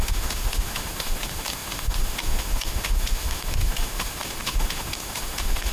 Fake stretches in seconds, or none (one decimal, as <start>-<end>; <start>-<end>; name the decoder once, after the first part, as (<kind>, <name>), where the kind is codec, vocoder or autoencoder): 0.0-5.7 (autoencoder, DAC-VAE)